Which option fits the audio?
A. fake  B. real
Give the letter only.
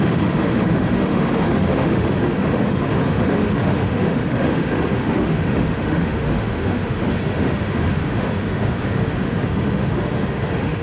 A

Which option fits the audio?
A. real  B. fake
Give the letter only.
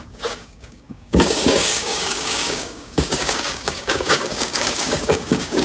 B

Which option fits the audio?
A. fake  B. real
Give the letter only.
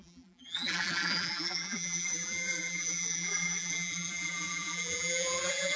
A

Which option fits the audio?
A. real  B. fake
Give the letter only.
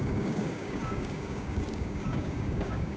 B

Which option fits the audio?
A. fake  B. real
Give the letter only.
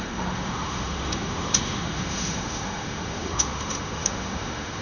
A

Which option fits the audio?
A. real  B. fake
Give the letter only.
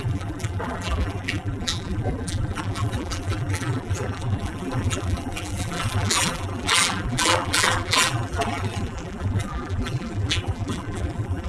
B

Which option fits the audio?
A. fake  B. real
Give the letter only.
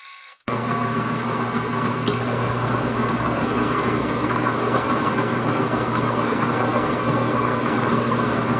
A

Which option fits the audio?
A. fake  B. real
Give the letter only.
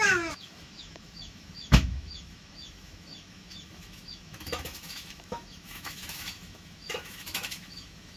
A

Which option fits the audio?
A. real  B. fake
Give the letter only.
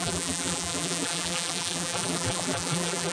B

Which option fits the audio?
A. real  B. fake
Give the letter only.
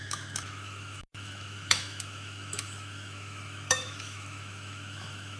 B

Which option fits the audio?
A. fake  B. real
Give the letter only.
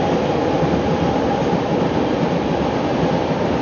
B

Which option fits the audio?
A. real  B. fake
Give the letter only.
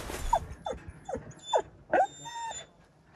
A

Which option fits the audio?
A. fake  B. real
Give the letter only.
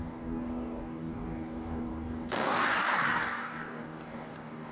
A